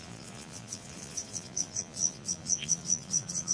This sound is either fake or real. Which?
fake